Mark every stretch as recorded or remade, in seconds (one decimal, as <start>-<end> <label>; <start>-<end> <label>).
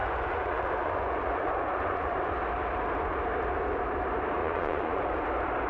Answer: 0.0-2.3 remade; 2.3-4.4 recorded; 4.4-5.0 remade; 5.0-5.7 recorded